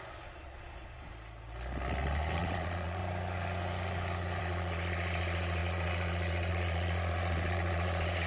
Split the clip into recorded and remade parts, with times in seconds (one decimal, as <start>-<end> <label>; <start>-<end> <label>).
0.0-1.1 remade; 1.1-2.4 recorded; 2.4-3.0 remade; 3.0-4.4 recorded; 4.4-8.3 remade